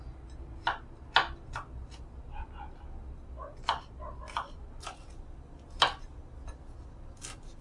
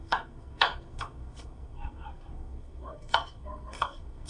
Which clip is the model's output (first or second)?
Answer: second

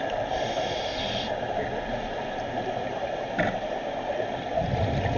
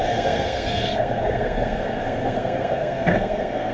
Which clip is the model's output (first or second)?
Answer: second